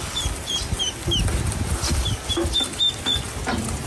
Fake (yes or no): no